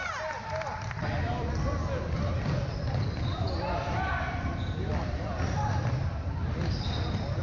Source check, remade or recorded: remade